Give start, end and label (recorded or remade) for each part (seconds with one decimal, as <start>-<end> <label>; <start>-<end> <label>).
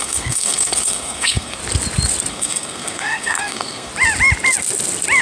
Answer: 0.0-1.6 remade; 1.6-2.3 recorded; 2.3-3.9 remade; 3.9-5.2 recorded